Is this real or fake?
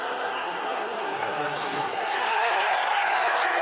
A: fake